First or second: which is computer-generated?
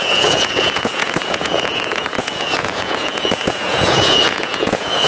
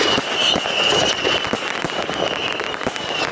first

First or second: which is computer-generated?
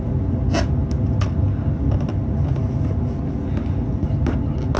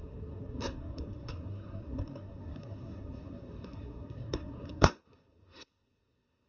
second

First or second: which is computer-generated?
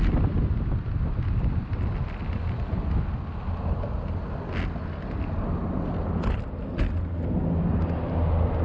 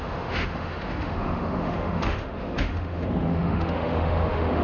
second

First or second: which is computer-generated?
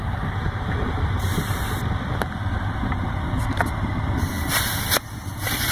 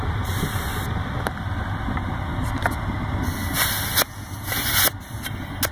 first